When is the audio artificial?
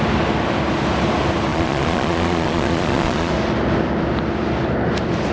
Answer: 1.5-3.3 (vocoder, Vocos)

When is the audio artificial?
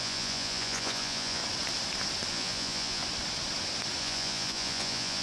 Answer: 0.0-1.4 (vocoder, Vocos); 2.3-3.0; 4.0-5.2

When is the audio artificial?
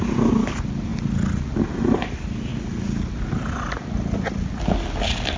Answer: none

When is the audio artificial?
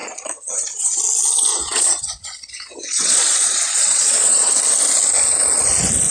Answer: 0.0-1.0 (vocoder, Vocos); 1.5-4.5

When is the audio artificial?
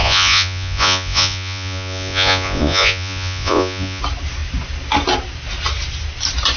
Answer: 0.0-4.0 (vocoder, Vocos)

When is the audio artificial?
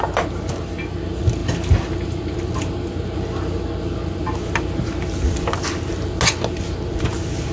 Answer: none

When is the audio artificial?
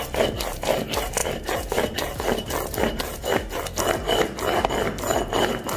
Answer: none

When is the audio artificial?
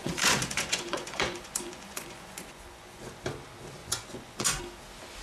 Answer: 0.0-3.1 (vocoder, Vocos); 3.8-4.6